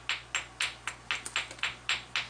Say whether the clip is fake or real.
real